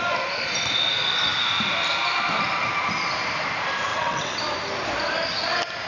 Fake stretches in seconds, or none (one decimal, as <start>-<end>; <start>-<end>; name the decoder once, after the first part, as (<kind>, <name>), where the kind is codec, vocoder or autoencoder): 3.9-4.4 (vocoder, WaveNeXt)